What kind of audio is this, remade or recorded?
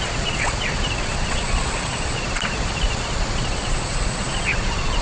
remade